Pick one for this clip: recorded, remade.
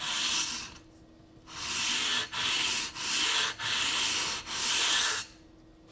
recorded